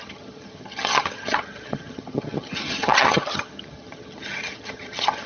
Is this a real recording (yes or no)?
no